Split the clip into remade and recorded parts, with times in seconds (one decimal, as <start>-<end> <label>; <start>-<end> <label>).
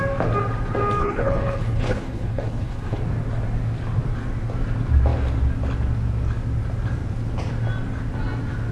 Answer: 0.0-1.0 recorded; 1.0-3.0 remade; 3.0-8.7 recorded